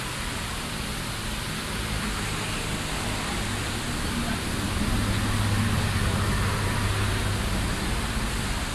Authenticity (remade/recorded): recorded